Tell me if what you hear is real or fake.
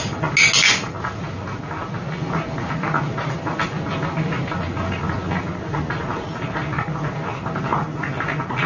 real